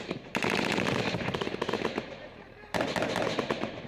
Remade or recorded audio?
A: remade